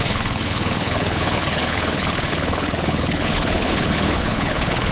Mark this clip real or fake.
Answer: fake